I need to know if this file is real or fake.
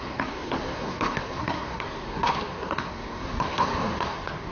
fake